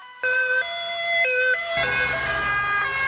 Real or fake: real